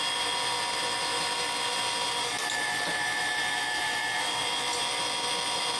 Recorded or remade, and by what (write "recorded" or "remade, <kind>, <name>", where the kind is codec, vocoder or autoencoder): remade, vocoder, BigVGAN v2